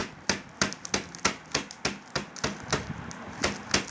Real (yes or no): yes